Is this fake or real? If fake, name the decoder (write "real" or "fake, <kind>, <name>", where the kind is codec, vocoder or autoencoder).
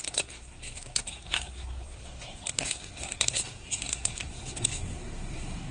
fake, codec, SNAC